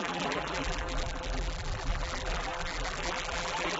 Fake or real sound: fake